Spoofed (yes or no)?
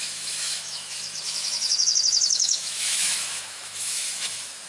yes